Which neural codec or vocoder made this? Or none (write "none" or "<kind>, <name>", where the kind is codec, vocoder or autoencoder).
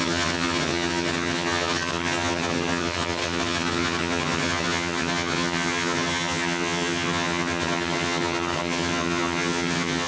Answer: vocoder, HiFi-GAN